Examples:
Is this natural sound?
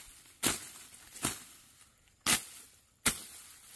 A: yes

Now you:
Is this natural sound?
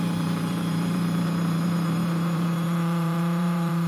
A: no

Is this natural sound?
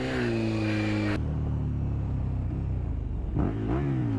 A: yes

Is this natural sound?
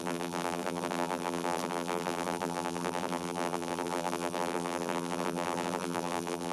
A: no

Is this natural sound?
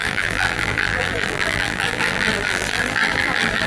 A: no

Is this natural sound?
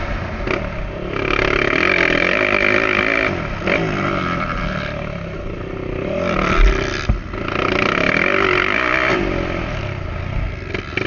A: yes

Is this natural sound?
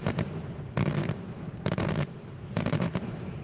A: no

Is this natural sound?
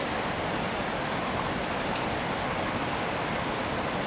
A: no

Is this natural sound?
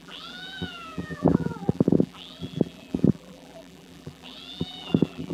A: no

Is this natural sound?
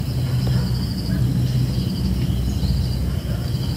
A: yes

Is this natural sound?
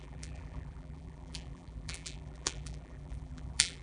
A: no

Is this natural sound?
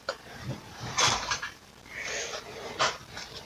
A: no